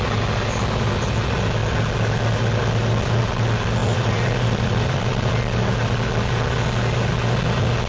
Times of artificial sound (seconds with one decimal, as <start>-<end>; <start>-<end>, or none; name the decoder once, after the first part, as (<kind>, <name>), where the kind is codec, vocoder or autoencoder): 3.8-5.3 (vocoder, BigVGAN v2)